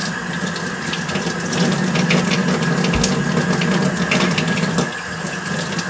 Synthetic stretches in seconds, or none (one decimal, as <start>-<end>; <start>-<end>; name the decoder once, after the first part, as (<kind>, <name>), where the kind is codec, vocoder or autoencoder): none